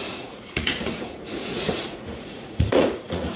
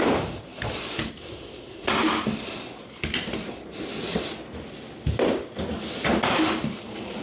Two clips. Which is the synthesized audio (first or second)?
first